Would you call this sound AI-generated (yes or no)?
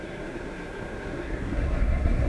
yes